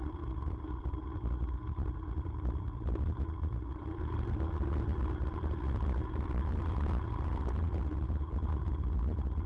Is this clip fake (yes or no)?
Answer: yes